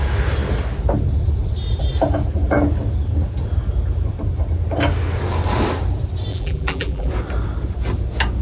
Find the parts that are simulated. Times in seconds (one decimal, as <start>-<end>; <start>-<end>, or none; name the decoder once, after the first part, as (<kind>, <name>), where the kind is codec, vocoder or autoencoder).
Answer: 6.3-7.1 (vocoder, BigVGAN v2)